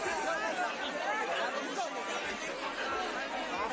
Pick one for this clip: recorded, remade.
recorded